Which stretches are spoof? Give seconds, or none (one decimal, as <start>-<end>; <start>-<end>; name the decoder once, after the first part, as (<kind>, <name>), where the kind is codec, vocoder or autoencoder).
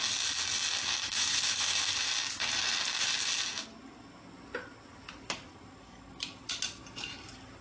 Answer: 1.0-1.9 (autoencoder, DAC-VAE)